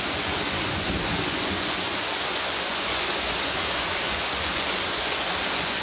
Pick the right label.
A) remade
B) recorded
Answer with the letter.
A